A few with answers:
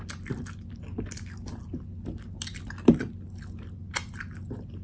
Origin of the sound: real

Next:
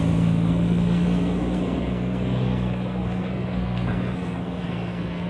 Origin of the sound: fake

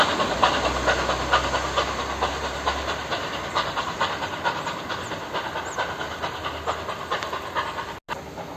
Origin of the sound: real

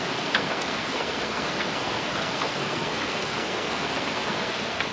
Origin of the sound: fake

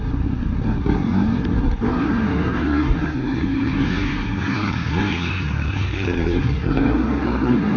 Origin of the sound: fake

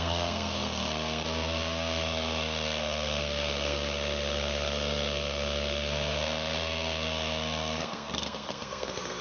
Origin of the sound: fake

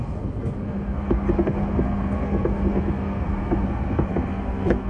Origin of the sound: fake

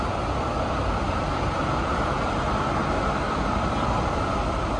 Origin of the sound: real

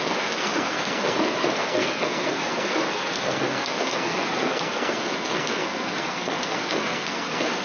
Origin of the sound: fake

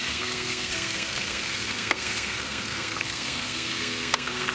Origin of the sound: fake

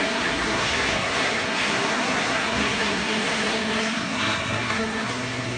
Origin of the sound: fake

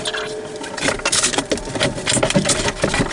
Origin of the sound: real